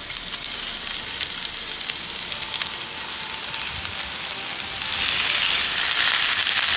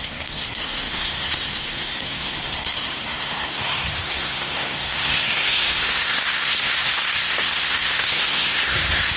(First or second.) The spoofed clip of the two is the second